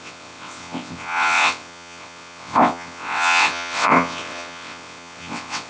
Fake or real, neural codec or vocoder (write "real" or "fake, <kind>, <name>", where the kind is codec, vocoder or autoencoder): fake, vocoder, WaveNeXt